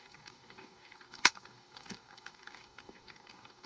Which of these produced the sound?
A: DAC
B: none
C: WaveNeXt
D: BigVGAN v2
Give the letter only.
A